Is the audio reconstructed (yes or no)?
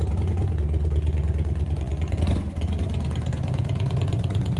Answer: yes